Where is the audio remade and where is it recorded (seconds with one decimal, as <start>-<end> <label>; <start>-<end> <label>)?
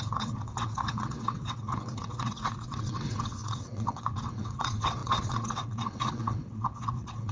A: 0.0-7.3 remade